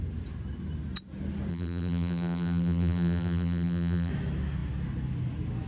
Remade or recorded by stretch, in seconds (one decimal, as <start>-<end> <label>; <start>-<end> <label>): 0.0-1.5 recorded; 1.5-4.1 remade; 4.1-5.7 recorded